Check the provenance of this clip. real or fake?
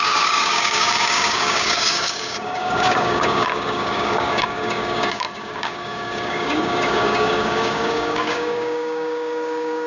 fake